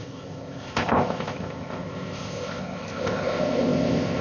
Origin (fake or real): fake